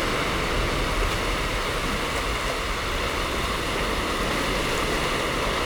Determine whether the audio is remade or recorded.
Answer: recorded